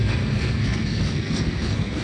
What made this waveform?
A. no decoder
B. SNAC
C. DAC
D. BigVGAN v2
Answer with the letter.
B